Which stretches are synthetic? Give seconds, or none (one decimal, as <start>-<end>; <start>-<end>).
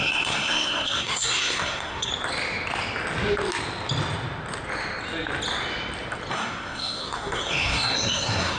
0.0-2.1; 6.3-8.6